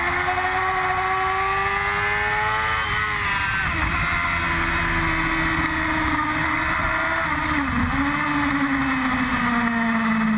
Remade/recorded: recorded